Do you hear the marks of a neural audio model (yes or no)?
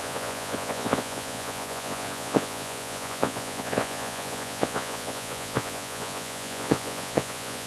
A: yes